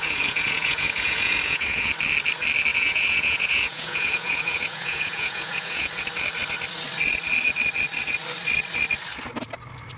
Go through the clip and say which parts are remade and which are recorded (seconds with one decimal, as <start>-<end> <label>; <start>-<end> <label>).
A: 0.0-1.9 remade; 1.9-2.7 recorded; 2.7-5.9 remade; 5.9-10.0 recorded